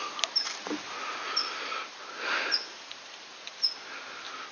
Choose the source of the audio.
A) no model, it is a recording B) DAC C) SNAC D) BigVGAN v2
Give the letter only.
A